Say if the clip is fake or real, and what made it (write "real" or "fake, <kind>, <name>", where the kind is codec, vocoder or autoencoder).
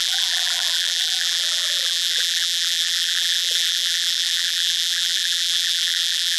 fake, vocoder, BigVGAN v2